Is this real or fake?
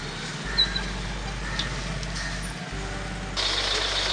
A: real